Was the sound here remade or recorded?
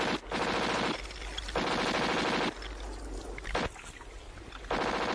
recorded